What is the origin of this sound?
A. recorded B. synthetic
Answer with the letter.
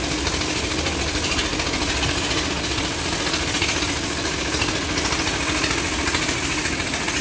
A